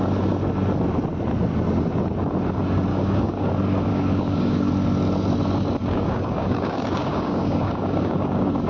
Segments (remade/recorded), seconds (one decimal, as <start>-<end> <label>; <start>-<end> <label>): 0.0-2.9 recorded; 2.9-3.5 remade; 3.5-3.9 recorded; 3.9-4.7 remade; 4.7-5.8 recorded; 5.8-8.7 remade